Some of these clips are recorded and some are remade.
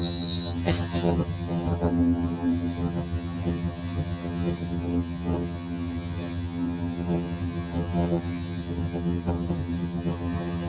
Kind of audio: remade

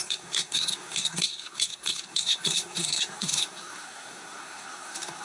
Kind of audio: remade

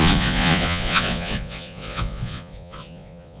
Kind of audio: remade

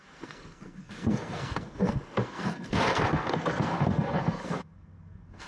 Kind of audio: remade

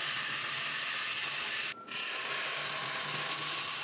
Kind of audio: recorded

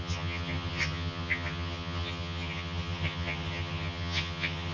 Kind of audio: remade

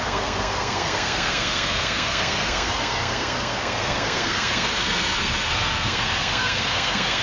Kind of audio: remade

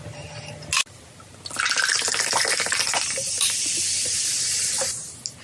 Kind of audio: recorded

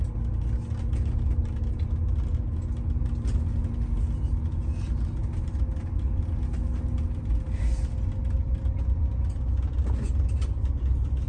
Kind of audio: recorded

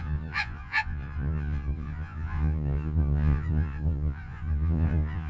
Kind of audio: remade